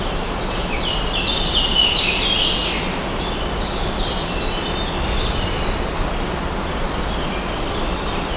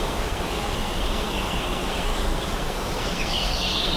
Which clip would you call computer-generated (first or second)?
second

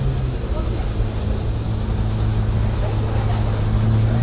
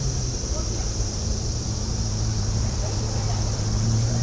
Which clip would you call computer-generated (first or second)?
second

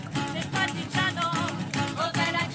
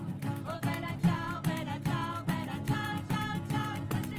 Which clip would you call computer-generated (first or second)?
first